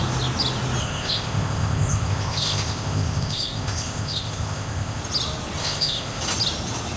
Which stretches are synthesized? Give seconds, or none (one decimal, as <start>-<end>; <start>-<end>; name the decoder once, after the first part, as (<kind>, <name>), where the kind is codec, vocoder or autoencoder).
0.8-5.0 (codec, ZipCodec); 5.6-6.2